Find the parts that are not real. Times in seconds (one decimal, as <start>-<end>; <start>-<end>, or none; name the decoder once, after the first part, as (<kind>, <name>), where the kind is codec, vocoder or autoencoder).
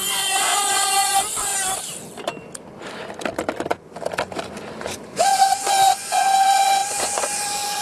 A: 0.0-1.5 (vocoder, Vocos); 4.8-7.8